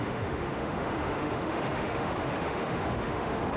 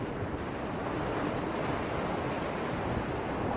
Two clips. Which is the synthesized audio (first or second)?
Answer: first